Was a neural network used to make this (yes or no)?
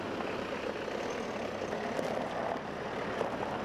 no